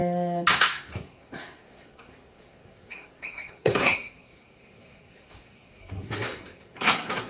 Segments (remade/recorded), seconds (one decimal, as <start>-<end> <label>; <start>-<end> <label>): 0.0-0.5 recorded; 0.5-7.3 remade